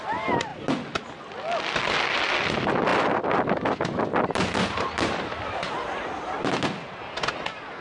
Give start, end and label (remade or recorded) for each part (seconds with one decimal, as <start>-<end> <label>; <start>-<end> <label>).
0.0-7.8 recorded